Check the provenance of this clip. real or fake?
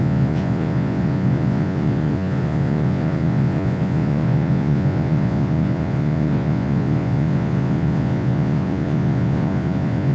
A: fake